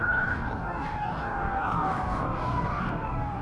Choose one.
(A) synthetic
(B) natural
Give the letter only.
A